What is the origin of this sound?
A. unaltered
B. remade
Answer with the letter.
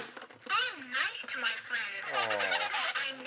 A